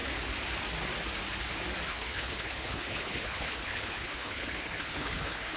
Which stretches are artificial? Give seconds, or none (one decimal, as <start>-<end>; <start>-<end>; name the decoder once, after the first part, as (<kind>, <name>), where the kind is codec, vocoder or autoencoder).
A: 1.9-5.6 (codec, HILCodec)